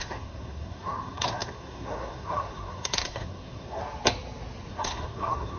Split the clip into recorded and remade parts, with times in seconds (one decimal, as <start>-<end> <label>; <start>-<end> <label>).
0.0-3.8 remade; 3.8-4.7 recorded; 4.7-5.6 remade